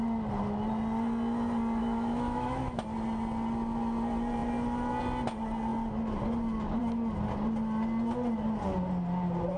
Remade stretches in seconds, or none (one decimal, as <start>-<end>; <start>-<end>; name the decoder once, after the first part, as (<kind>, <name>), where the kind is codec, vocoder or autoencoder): 1.8-2.8 (autoencoder, DAC-VAE)